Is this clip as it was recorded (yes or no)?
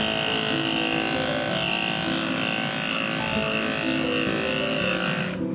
yes